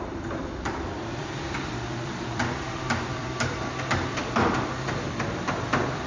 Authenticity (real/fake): fake